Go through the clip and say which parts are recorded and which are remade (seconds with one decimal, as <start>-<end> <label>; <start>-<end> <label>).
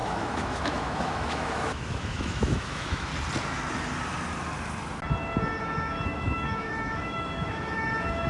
0.0-3.1 remade; 3.1-5.6 recorded; 5.6-8.3 remade